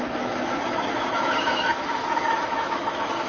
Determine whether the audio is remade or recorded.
remade